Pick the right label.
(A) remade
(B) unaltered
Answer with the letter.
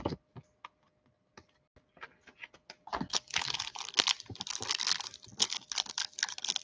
B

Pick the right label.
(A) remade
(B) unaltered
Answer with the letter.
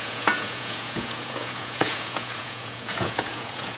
A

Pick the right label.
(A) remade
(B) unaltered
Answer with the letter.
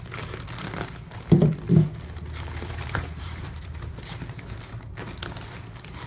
A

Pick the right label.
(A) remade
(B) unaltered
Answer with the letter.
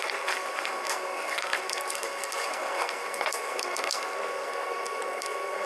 A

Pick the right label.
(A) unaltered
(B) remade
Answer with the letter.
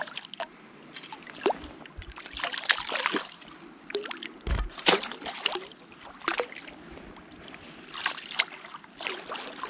A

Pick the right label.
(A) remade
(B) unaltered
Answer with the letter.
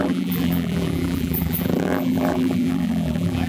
A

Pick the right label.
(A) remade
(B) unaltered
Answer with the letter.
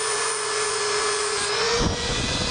A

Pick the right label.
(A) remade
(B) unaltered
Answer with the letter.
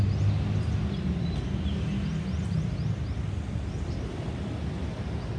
B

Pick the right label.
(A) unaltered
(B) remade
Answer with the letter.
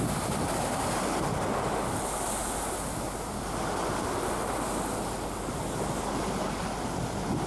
A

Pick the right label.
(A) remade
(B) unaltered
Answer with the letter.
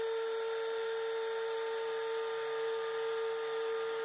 B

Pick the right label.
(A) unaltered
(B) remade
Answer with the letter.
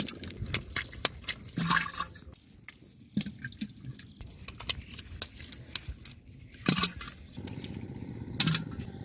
A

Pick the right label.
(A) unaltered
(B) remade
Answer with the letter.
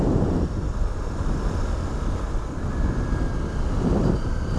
A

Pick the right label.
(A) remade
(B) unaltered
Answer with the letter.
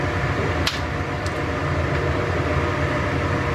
B